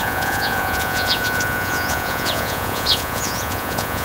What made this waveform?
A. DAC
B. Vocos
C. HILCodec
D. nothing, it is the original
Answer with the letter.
B